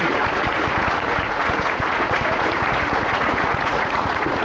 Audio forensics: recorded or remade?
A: remade